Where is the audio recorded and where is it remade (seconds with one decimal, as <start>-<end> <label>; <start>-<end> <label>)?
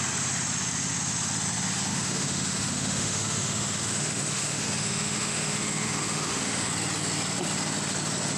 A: 0.0-1.9 recorded; 1.9-6.7 remade; 6.7-8.4 recorded